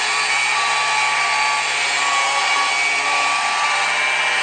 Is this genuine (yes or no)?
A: yes